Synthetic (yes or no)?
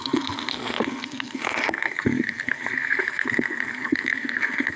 yes